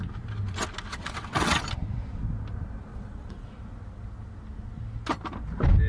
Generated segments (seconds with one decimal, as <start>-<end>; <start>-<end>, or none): 0.9-1.6; 2.9-3.5